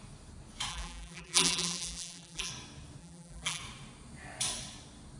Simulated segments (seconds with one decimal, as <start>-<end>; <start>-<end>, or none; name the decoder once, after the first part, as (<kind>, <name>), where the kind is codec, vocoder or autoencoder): 0.7-2.5 (vocoder, BigVGAN v2); 3.0-3.6

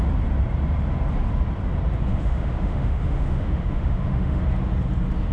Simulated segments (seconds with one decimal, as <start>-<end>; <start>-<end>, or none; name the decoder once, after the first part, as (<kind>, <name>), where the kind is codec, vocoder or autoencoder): 2.1-4.4 (autoencoder, DAC-VAE)

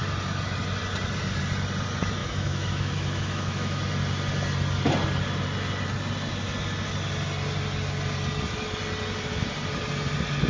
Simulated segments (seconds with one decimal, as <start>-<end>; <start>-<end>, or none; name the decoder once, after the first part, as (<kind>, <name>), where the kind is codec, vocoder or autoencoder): 2.2-3.8 (autoencoder, DAC-VAE)

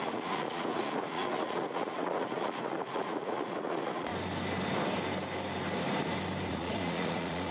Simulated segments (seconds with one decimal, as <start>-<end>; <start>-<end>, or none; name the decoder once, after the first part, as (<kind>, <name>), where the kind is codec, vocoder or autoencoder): 0.0-4.1 (vocoder, Vocos); 6.5-7.5

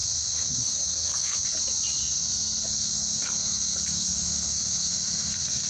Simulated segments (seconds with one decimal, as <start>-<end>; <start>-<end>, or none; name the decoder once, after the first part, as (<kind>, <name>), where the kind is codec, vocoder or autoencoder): 0.0-1.6 (codec, SNAC); 2.0-5.7